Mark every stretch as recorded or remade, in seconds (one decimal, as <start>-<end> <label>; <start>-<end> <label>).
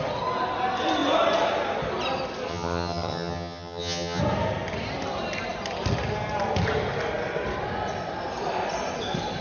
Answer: 0.0-2.5 recorded; 2.5-4.2 remade; 4.2-9.4 recorded